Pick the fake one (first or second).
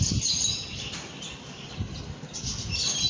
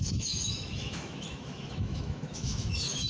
second